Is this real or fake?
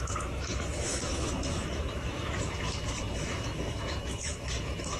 fake